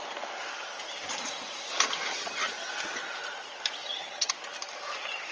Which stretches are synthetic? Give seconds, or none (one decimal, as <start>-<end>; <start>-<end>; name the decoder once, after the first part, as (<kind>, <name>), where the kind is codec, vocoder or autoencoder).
2.1-2.7 (vocoder, HiFi-GAN); 3.8-4.3